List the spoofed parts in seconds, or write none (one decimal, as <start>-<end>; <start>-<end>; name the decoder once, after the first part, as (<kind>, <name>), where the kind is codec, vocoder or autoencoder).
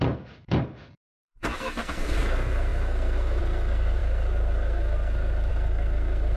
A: 0.0-6.4 (codec, SNAC)